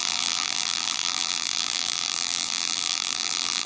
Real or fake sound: fake